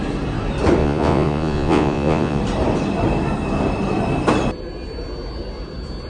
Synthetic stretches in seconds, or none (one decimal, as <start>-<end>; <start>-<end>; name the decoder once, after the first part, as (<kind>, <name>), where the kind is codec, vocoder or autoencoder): 0.8-2.4 (vocoder, Vocos)